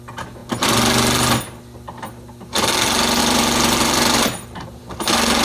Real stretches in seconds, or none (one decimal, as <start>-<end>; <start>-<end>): 0.0-3.2; 4.8-5.4